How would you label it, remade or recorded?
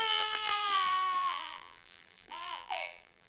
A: remade